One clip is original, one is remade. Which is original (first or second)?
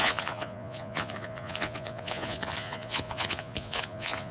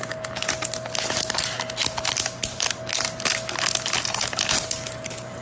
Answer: second